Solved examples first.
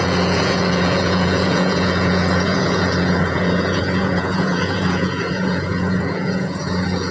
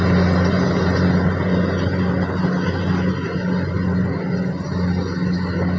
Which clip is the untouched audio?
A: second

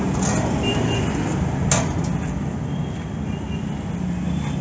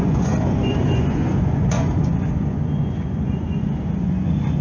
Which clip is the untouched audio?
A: first